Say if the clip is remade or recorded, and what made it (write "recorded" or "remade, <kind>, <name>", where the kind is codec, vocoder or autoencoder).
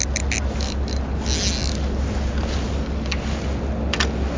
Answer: recorded